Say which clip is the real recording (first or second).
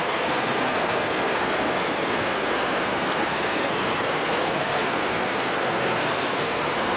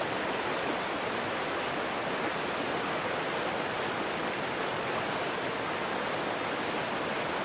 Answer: second